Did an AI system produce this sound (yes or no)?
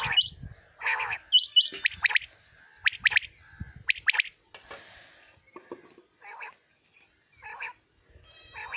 no